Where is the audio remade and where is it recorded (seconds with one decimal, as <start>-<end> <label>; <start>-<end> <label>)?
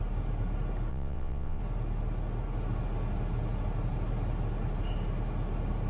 0.0-0.9 recorded; 0.9-1.6 remade; 1.6-5.9 recorded